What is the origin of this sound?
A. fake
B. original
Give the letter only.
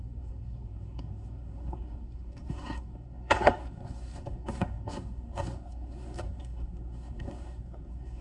A